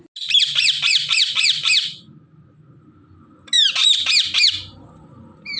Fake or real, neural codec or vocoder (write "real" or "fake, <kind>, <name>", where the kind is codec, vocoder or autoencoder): real